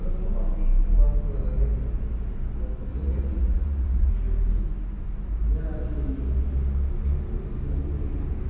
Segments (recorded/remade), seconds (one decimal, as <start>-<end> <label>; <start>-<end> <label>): 0.0-2.9 recorded; 2.9-4.1 remade; 4.1-8.5 recorded